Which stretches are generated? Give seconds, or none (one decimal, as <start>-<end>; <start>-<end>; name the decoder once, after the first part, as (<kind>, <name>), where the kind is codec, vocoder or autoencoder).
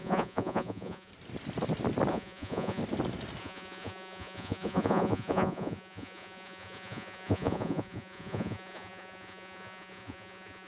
0.0-1.1 (vocoder, Vocos); 2.1-2.8; 3.4-10.7